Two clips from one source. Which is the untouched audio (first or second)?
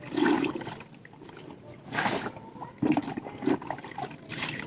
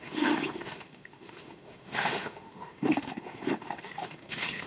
first